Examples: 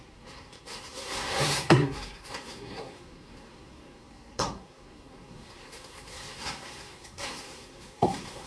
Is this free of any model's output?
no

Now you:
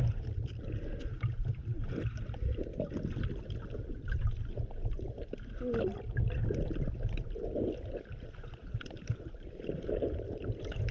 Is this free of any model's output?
yes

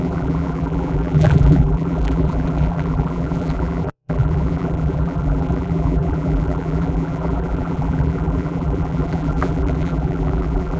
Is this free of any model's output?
no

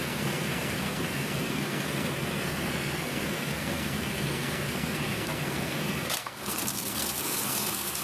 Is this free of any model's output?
no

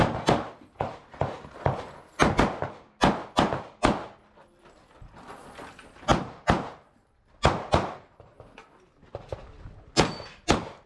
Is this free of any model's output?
yes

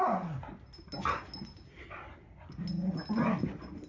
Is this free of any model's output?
yes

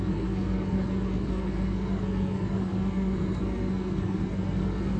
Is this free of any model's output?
no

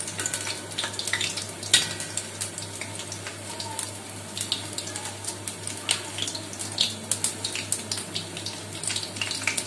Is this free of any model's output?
yes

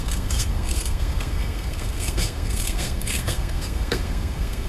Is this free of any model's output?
no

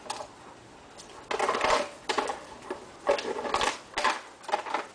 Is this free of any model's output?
yes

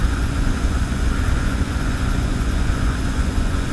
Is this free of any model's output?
no